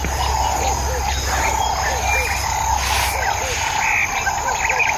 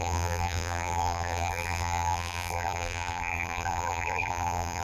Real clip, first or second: first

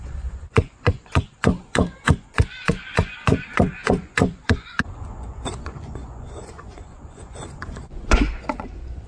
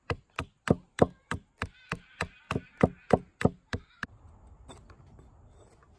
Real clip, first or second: second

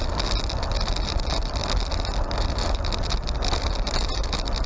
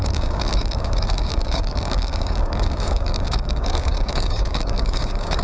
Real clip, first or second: first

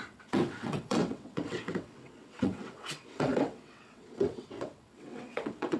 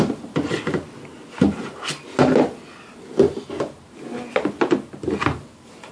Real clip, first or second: second